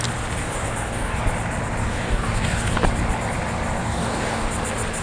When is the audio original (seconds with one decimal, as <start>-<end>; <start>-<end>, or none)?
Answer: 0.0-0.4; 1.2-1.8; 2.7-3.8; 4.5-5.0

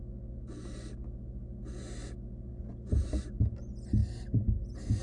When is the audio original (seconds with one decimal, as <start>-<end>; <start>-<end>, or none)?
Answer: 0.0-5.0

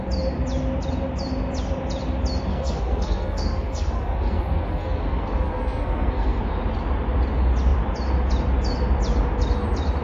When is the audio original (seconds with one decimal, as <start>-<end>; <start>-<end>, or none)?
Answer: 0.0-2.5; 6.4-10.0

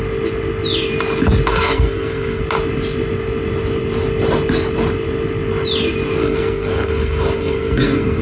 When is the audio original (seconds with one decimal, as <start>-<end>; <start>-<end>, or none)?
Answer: 0.0-1.5; 2.4-6.2

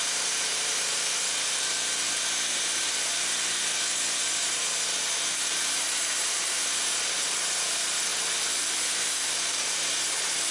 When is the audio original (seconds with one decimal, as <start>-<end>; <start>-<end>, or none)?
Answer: 8.1-8.7

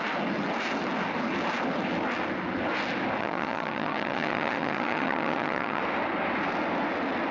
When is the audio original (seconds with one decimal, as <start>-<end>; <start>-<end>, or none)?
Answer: 0.0-3.2; 5.8-7.3

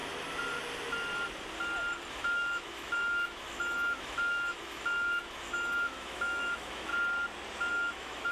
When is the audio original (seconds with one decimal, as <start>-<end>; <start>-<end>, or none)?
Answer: 0.0-2.1; 6.9-7.7